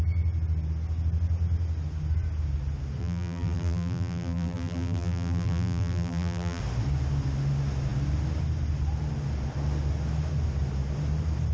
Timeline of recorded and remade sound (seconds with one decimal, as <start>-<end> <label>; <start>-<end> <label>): 0.0-3.0 recorded; 3.0-6.6 remade; 6.6-11.5 recorded